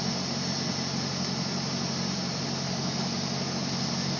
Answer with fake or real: real